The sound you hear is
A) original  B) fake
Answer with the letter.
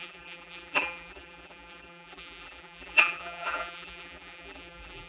B